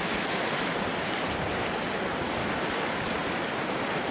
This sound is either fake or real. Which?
real